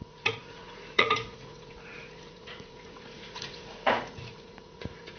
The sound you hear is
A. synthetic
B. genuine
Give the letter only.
A